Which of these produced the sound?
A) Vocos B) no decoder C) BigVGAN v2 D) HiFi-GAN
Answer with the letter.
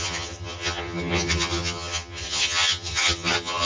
D